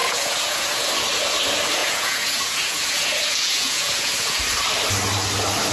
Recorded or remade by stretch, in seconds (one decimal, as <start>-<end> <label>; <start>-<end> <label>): 0.0-0.9 remade; 0.9-1.8 recorded; 1.8-4.5 remade; 4.5-5.7 recorded